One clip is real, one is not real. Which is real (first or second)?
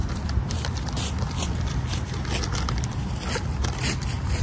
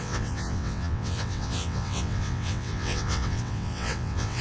first